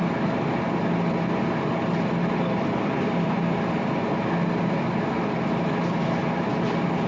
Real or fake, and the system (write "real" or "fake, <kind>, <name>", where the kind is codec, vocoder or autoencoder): real